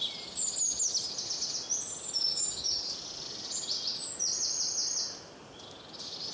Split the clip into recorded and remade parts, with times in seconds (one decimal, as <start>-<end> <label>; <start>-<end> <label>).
0.0-2.3 recorded; 2.3-2.8 remade; 2.8-6.3 recorded